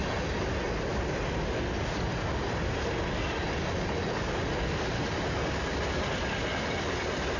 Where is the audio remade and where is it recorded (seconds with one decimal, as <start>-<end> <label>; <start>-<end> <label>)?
0.0-7.4 recorded